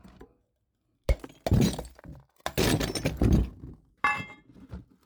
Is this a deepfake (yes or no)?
no